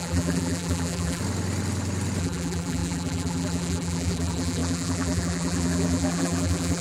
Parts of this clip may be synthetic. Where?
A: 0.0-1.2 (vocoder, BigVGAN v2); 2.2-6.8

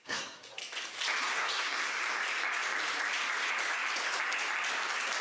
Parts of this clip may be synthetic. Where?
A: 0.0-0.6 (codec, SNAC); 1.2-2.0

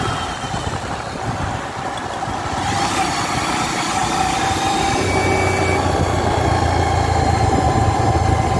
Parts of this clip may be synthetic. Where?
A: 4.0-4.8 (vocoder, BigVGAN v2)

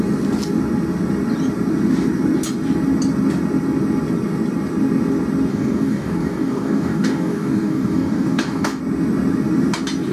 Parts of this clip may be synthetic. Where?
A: 5.5-8.8 (codec, DAC)

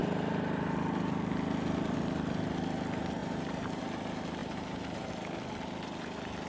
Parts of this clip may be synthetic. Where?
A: 3.2-3.8 (vocoder, BigVGAN v2); 4.4-5.1

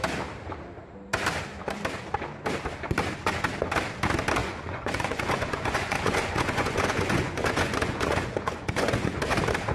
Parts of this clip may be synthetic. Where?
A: 4.4-9.2 (vocoder, Vocos)

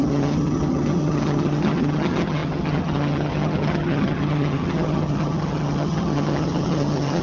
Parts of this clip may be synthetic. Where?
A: 0.0-7.2 (vocoder, HiFi-GAN)